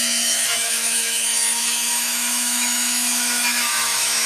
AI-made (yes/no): yes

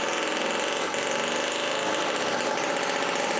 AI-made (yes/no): no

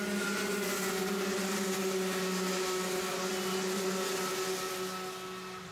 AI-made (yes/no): no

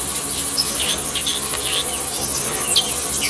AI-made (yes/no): no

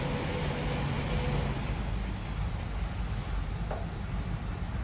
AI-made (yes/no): no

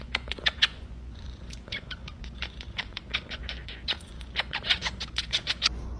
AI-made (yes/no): yes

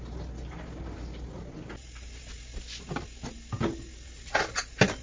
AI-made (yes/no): no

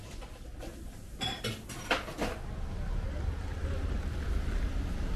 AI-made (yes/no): no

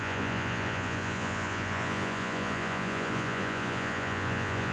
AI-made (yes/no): yes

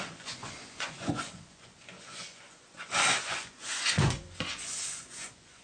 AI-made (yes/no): yes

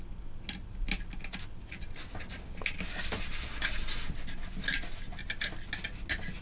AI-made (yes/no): no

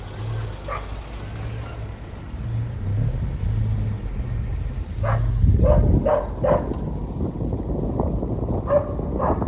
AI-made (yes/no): no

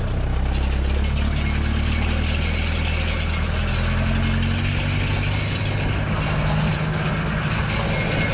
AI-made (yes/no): no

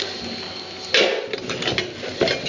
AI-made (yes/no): no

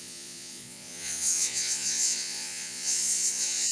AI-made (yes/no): yes